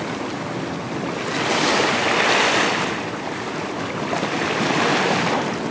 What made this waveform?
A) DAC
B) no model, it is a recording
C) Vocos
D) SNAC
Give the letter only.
B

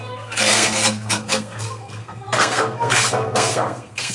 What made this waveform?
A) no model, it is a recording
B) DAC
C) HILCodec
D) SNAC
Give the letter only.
D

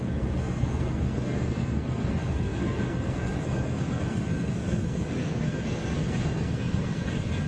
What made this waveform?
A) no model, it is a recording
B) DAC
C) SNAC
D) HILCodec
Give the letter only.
C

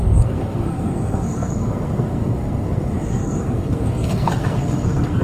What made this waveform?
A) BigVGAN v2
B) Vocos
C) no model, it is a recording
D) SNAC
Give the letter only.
D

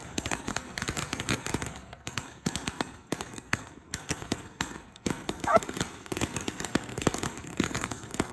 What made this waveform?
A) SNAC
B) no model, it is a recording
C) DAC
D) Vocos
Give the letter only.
A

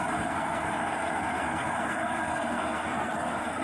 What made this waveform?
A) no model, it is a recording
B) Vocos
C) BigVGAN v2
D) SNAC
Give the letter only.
D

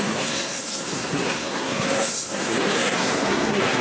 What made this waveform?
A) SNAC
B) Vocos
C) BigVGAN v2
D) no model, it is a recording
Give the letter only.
A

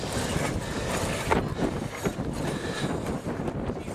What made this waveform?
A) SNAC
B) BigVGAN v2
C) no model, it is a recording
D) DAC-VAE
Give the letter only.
C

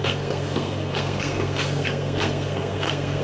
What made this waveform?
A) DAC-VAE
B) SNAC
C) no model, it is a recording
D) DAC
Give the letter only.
B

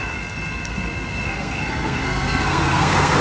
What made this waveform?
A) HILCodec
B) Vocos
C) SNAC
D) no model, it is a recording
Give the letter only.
C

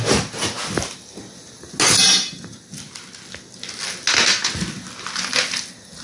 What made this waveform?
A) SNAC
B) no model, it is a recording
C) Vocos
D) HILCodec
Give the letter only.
B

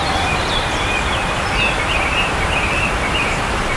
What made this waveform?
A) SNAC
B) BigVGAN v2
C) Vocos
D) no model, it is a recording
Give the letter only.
D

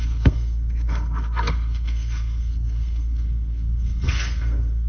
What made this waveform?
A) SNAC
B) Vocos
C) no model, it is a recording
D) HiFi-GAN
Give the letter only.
A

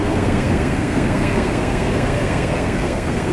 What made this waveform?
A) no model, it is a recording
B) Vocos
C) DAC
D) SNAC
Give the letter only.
D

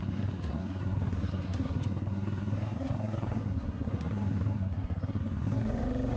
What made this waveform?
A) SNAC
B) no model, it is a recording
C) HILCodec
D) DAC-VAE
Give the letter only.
A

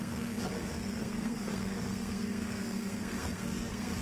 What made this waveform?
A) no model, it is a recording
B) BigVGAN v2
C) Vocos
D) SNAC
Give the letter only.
D